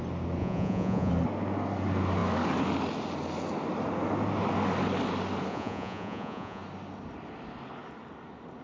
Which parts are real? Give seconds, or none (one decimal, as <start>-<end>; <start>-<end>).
0.0-0.4; 1.1-5.5; 6.6-8.6